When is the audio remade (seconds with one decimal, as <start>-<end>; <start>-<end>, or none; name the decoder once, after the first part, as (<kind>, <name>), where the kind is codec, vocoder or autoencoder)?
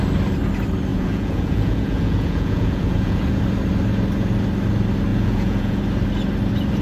0.9-3.4 (vocoder, Vocos); 5.1-5.8